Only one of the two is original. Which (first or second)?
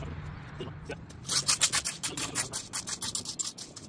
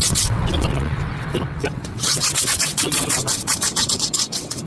first